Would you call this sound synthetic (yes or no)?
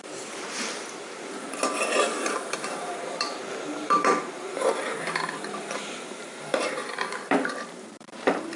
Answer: yes